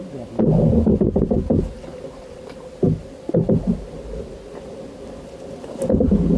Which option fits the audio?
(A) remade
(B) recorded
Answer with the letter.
B